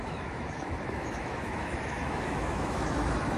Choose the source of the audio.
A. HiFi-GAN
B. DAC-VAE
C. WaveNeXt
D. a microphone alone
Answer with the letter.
B